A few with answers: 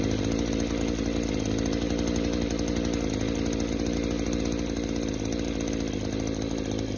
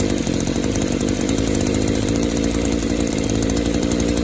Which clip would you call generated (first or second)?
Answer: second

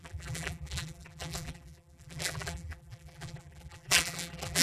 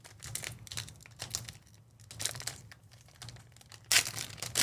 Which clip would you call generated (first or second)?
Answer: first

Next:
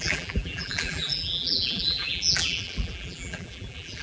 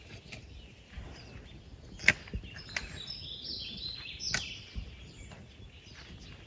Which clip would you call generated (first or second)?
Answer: first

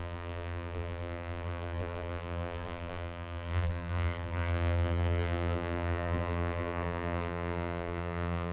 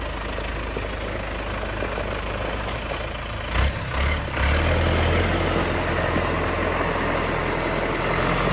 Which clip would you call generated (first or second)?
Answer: first